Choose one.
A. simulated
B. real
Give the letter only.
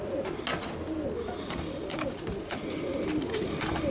B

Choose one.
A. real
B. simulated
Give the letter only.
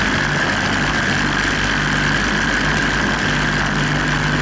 A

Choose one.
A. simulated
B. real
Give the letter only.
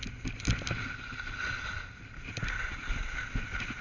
B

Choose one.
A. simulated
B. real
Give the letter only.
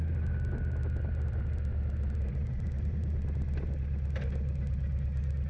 B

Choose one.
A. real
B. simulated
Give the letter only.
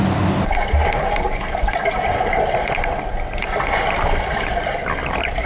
A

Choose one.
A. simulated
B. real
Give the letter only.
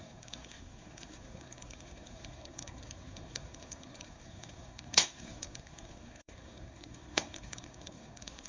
A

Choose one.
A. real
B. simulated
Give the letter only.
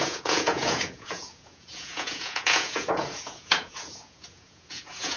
B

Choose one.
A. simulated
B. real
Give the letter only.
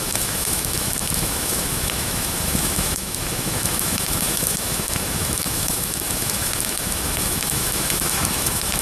A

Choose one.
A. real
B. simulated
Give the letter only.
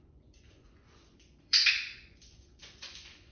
B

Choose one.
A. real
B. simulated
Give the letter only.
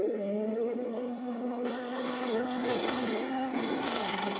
B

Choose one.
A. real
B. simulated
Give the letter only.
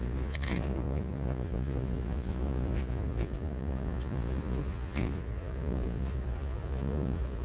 B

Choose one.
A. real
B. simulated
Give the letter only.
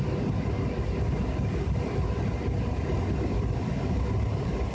A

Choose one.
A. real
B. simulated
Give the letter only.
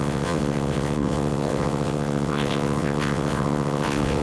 B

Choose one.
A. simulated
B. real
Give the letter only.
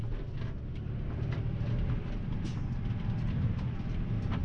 B